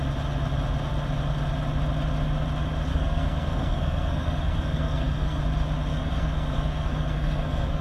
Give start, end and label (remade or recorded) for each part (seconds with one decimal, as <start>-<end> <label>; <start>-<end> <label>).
0.0-2.9 recorded; 2.9-5.4 remade; 5.4-5.9 recorded; 5.9-7.8 remade